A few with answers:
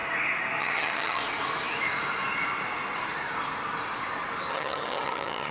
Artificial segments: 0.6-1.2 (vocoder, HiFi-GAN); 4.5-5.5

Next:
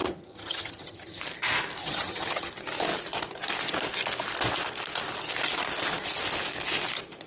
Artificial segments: 0.0-1.2 (vocoder, HiFi-GAN); 1.8-2.5

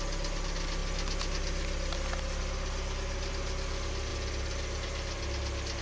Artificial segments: none

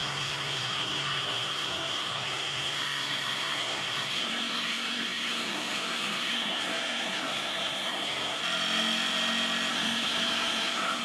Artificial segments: 0.0-8.4 (codec, SNAC); 9.7-11.0

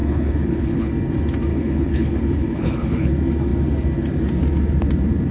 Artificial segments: 0.0-0.9 (codec, HILCodec); 1.5-3.1